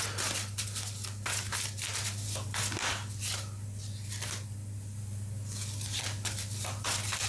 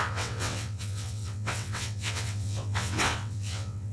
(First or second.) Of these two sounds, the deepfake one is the second